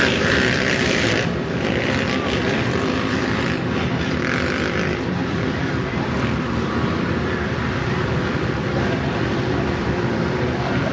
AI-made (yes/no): yes